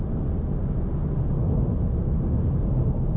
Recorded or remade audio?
recorded